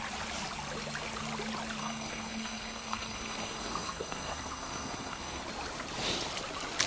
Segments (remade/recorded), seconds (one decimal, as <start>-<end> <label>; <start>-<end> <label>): 0.0-1.8 recorded; 1.8-5.4 remade; 5.4-6.9 recorded